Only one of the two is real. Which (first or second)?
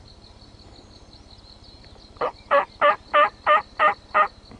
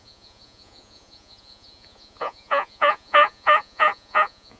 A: first